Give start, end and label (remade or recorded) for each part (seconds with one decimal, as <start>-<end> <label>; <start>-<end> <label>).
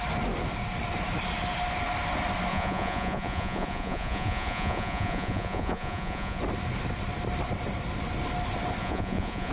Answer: 0.0-2.5 recorded; 2.5-6.4 remade; 6.4-8.8 recorded; 8.8-9.5 remade